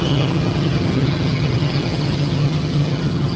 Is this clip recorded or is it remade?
remade